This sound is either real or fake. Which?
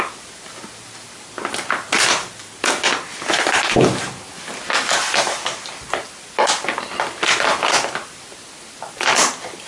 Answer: real